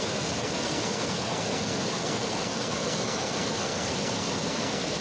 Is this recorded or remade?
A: remade